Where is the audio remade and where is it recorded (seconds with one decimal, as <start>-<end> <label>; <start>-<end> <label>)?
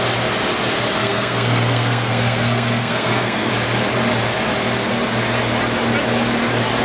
0.0-1.0 recorded; 1.0-3.5 remade; 3.5-6.8 recorded